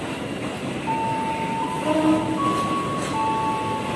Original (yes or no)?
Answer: yes